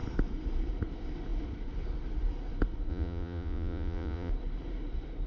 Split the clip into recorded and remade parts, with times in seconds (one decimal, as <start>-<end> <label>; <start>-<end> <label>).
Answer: 0.0-2.9 recorded; 2.9-4.3 remade; 4.3-5.3 recorded